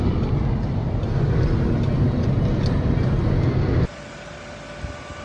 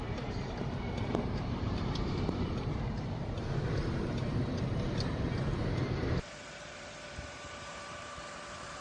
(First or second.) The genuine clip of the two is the first